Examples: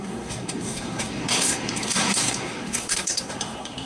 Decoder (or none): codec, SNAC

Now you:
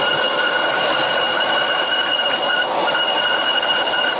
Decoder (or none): none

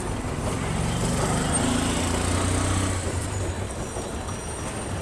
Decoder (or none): none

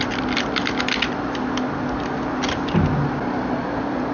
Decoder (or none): none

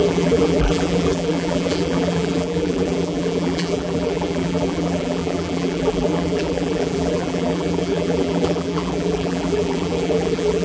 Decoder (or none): vocoder, BigVGAN v2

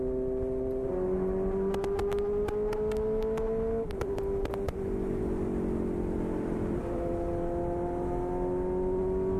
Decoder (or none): none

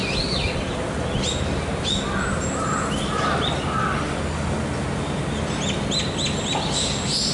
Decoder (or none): none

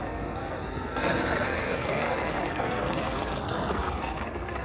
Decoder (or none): codec, SNAC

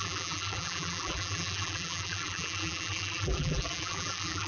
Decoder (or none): vocoder, BigVGAN v2